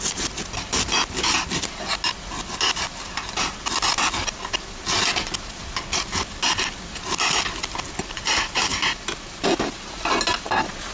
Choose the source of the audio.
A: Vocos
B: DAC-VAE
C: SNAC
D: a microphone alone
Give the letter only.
D